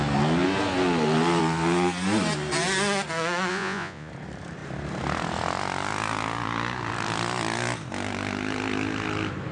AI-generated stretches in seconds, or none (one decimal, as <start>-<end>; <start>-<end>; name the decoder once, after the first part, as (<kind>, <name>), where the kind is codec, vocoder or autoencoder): 3.5-4.1 (vocoder, Vocos)